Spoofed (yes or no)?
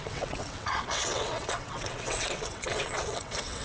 yes